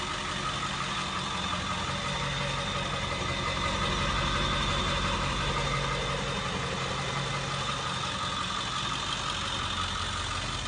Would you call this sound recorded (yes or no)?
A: yes